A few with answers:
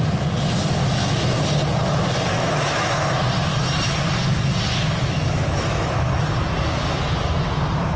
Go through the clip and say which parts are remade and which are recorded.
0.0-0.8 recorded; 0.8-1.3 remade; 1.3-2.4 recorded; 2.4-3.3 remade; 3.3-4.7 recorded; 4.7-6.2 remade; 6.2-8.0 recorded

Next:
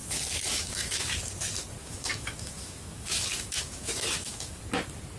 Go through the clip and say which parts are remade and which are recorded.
0.0-1.1 remade; 1.1-1.8 recorded; 1.8-4.6 remade; 4.6-5.2 recorded

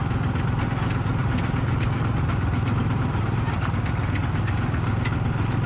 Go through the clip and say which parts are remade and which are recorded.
0.0-0.5 remade; 0.5-1.2 recorded; 1.2-3.9 remade; 3.9-5.7 recorded

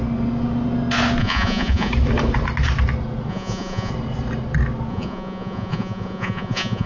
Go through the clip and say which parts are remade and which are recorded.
0.0-1.2 recorded; 1.2-1.9 remade; 1.9-3.3 recorded; 3.3-3.9 remade; 3.9-4.9 recorded; 4.9-6.9 remade

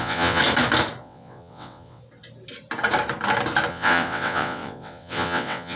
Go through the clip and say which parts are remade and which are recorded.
0.0-0.4 remade; 0.4-1.0 recorded; 1.0-2.0 remade; 2.0-3.7 recorded; 3.7-5.8 remade

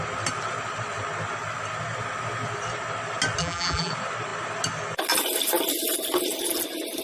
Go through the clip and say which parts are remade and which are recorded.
0.0-3.4 recorded; 3.4-3.9 remade; 3.9-7.0 recorded